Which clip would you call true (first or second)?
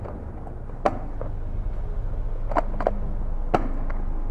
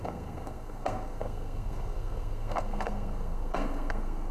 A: first